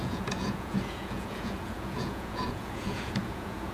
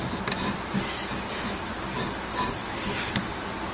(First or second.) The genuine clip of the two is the second